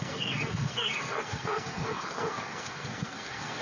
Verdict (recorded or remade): remade